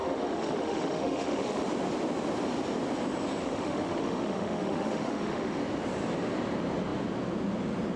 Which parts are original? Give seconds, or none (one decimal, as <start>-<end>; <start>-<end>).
1.6-3.4; 5.6-8.0